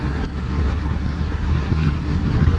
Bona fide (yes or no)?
no